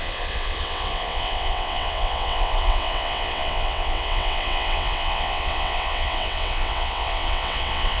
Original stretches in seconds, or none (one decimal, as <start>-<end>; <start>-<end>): none